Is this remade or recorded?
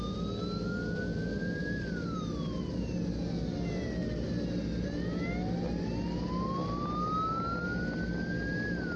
recorded